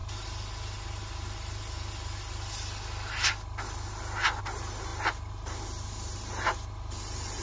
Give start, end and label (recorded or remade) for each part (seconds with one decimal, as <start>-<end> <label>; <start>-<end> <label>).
0.0-4.4 recorded; 4.4-7.4 remade